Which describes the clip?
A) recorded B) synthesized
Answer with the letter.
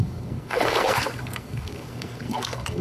B